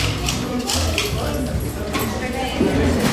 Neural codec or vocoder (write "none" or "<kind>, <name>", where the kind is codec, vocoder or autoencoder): none